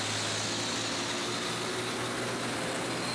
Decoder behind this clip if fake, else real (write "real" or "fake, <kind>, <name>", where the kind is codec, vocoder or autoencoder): real